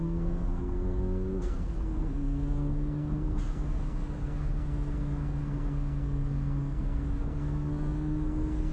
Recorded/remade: remade